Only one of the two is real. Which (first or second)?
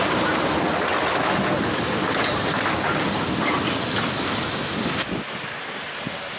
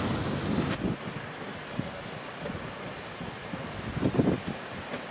first